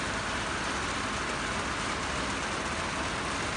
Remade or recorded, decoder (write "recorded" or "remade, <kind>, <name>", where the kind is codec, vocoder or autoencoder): recorded